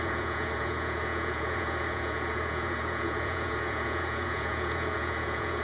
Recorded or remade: remade